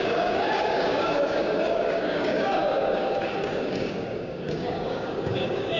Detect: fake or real fake